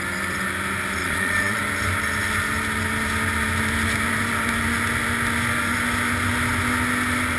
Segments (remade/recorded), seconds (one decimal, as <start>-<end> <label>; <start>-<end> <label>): 0.0-1.0 recorded; 1.0-1.6 remade; 1.6-7.4 recorded